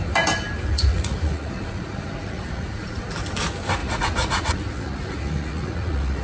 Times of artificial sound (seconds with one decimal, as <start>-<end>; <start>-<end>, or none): 0.9-3.0; 3.8-6.2